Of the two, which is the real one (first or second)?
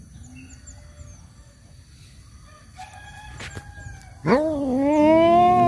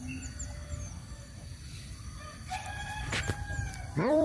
first